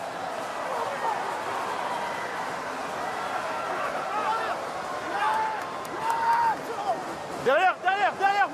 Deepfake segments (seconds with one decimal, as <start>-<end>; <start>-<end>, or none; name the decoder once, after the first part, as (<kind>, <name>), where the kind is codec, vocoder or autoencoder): none